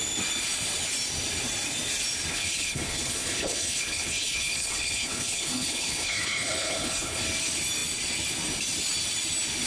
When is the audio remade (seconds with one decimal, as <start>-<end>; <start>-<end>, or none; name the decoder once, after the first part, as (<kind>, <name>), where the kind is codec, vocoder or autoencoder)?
2.3-7.2 (codec, HILCodec)